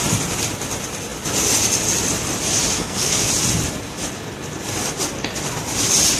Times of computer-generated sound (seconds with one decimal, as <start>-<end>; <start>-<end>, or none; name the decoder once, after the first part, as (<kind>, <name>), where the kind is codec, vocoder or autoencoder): 2.7-3.3 (codec, SNAC)